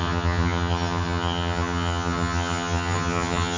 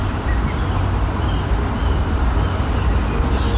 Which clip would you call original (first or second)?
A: second